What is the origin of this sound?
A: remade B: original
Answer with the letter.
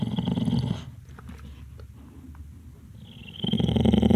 B